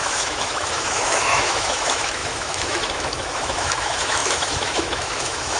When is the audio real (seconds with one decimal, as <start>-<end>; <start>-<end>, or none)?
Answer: none